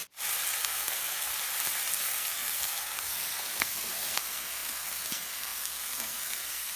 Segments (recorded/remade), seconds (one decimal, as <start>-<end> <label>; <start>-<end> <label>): 0.0-0.6 recorded; 0.6-1.3 remade; 1.3-1.9 recorded; 1.9-6.8 remade